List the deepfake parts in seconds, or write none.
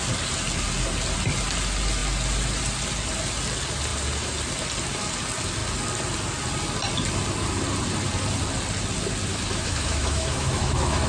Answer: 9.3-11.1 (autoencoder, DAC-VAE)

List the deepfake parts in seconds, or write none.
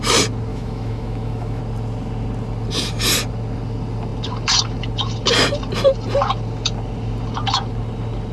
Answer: 0.5-1.6 (autoencoder, DAC-VAE)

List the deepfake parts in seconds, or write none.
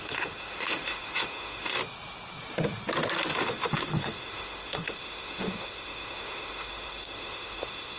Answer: 0.0-1.8 (autoencoder, DAC-VAE); 3.3-8.0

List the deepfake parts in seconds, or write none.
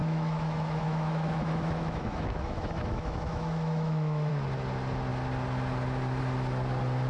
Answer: 0.0-4.3 (autoencoder, DAC-VAE)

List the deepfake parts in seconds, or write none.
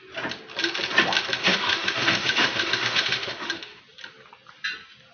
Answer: 1.4-3.8 (autoencoder, DAC-VAE)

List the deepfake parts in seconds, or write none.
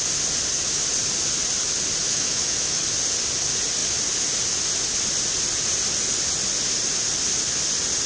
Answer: 2.0-2.8 (autoencoder, DAC-VAE)